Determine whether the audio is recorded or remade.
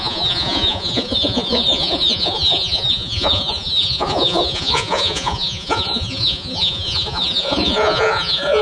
remade